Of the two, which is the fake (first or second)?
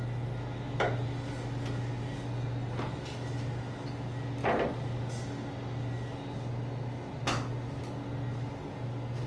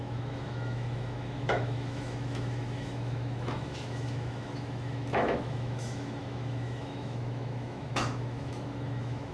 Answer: second